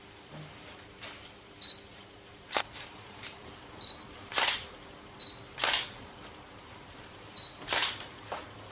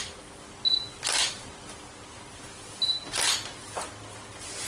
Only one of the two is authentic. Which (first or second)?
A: second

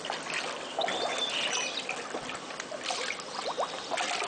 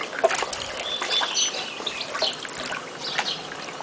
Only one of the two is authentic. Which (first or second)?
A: second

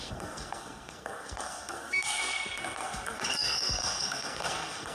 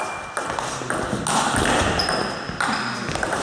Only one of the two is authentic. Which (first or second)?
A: second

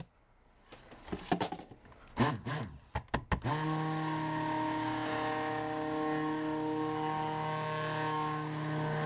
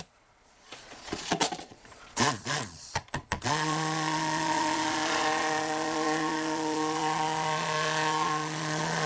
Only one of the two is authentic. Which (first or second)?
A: first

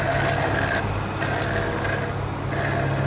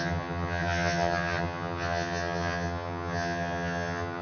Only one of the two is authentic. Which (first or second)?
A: first